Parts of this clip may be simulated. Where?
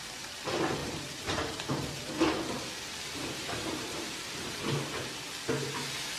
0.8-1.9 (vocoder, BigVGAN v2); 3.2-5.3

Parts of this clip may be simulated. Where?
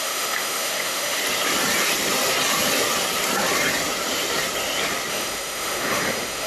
0.0-1.2 (autoencoder, DAC-VAE); 5.1-6.5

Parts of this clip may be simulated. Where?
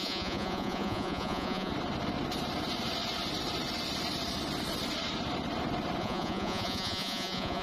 0.0-1.7 (vocoder, Vocos); 6.0-7.6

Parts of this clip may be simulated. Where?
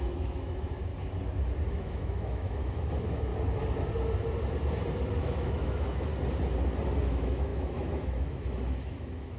0.0-0.9 (autoencoder, DAC-VAE); 1.7-3.3; 5.1-6.1; 7.0-9.4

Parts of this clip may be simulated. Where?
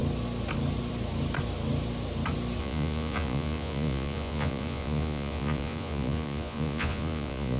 2.6-7.6 (vocoder, Vocos)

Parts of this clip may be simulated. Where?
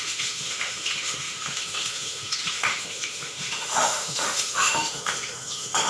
0.0-5.9 (autoencoder, DAC-VAE)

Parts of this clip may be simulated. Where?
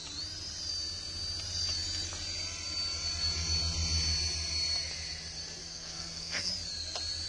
5.6-6.5 (codec, SNAC)